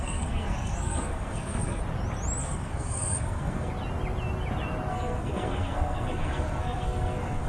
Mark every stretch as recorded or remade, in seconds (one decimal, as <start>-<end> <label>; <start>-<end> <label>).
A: 0.0-1.8 remade; 1.8-2.4 recorded; 2.4-3.7 remade; 3.7-4.9 recorded; 4.9-7.5 remade